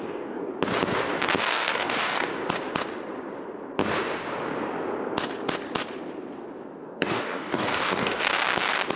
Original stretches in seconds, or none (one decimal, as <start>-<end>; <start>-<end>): 0.5-1.4; 2.3-6.8; 8.3-9.0

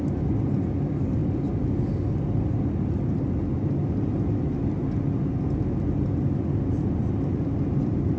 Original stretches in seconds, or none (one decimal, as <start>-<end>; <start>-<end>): 0.0-8.2

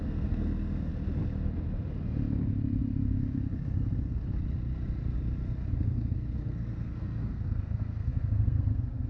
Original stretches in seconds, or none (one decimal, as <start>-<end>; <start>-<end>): 0.9-5.7

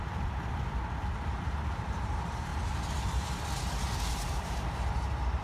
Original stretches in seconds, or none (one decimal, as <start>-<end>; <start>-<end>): 2.5-4.1

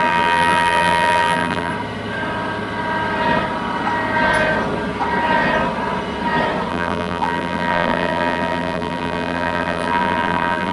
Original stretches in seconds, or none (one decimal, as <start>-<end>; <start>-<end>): 1.7-6.7

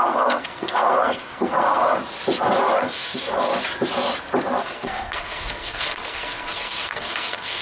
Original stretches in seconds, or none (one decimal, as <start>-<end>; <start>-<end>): 1.9-2.8; 3.5-4.6

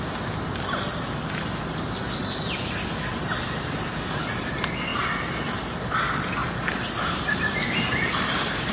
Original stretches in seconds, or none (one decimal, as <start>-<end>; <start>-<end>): 2.0-3.0

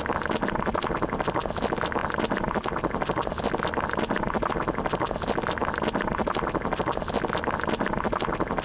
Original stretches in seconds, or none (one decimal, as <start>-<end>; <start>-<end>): 0.0-2.0; 4.5-5.6; 6.8-8.6